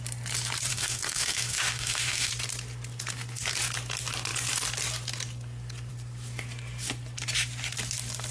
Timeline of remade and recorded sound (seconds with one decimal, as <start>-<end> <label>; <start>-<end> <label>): 0.0-0.7 recorded; 0.7-2.3 remade; 2.3-8.3 recorded